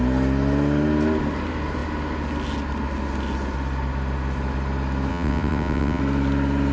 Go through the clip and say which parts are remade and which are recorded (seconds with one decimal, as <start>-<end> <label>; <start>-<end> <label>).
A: 0.0-5.1 recorded; 5.1-6.0 remade; 6.0-6.7 recorded